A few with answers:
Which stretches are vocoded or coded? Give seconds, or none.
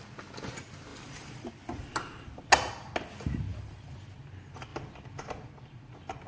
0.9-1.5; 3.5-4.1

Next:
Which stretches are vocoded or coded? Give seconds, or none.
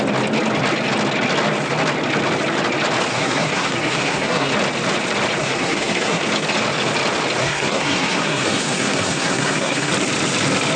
3.1-4.5; 5.4-6.2; 7.4-9.9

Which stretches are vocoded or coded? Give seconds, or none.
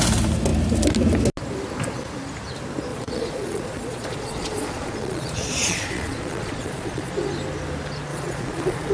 2.9-7.1; 8.1-8.9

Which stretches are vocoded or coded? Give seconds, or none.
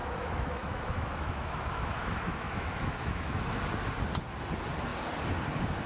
0.0-3.5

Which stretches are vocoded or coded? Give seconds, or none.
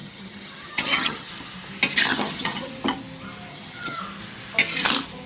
0.0-1.3; 2.1-2.7; 3.5-4.0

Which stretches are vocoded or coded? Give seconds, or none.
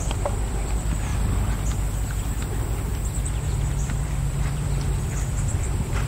0.0-1.1; 2.3-2.9; 3.4-6.1